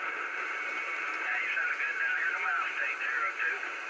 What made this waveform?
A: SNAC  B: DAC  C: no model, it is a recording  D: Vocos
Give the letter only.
C